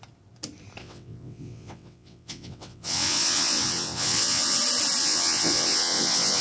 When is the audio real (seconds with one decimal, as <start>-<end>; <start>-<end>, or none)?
0.0-0.8; 4.6-5.0